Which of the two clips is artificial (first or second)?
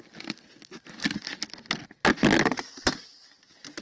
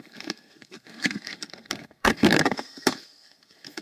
second